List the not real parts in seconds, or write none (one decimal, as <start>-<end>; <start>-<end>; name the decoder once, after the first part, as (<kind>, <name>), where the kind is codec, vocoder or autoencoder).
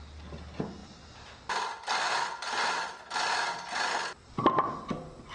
none